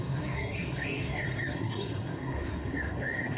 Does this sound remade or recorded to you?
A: remade